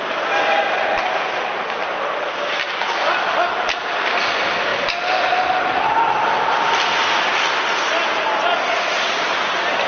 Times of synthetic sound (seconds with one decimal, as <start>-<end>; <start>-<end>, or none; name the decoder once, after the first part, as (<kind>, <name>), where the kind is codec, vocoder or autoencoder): none